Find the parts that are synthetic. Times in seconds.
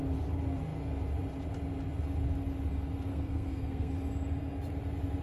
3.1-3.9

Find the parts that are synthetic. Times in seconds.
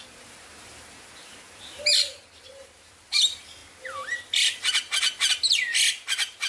none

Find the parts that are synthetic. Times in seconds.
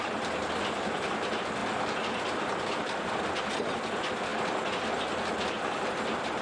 none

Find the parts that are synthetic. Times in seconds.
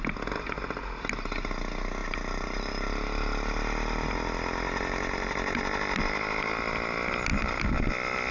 none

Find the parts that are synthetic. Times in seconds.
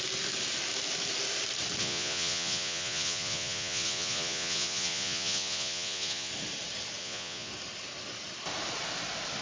1.8-6.3; 7.0-7.5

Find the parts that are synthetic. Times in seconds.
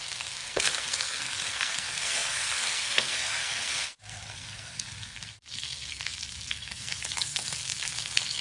0.0-8.4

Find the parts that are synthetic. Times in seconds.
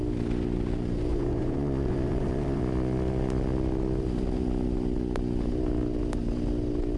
1.1-2.6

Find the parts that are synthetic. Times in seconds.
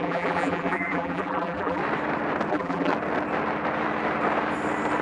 0.0-1.8; 2.5-2.9